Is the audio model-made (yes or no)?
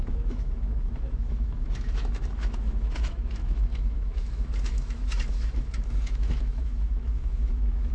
yes